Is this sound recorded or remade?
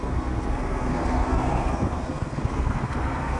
remade